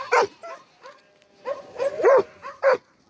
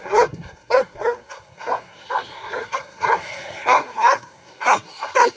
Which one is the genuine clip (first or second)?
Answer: first